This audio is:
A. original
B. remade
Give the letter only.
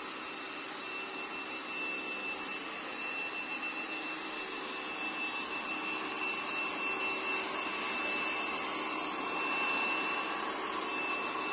A